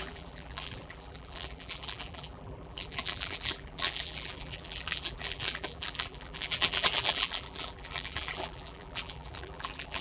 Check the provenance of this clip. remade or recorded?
remade